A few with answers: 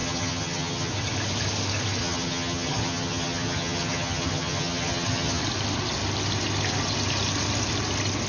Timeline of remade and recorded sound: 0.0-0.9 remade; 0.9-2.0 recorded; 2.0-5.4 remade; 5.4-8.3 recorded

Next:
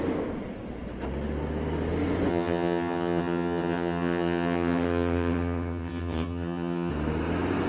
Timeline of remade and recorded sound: 0.0-2.3 recorded; 2.3-6.9 remade; 6.9-7.7 recorded

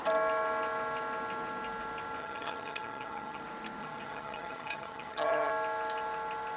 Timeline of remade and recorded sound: 0.0-2.2 recorded; 2.2-3.4 remade; 3.4-3.8 recorded; 3.8-5.5 remade; 5.5-6.6 recorded